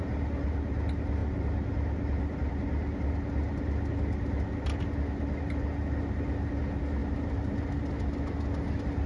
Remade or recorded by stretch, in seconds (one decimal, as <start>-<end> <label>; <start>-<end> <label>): 0.0-9.1 recorded